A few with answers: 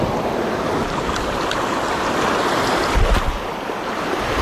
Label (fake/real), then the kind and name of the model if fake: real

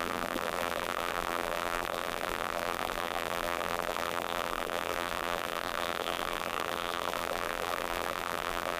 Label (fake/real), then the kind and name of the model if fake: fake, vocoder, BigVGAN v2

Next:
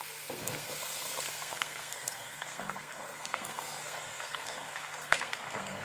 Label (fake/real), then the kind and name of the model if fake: fake, codec, SNAC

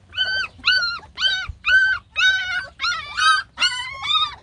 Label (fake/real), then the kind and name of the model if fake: real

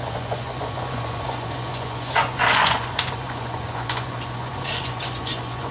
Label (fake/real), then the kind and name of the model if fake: fake, vocoder, Vocos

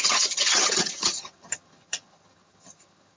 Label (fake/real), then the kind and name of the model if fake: fake, vocoder, HiFi-GAN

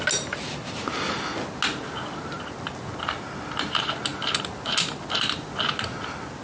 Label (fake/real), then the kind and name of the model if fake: real